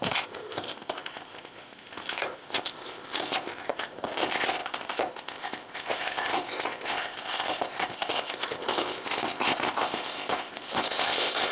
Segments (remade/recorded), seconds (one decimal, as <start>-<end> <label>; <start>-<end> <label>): 0.0-11.5 remade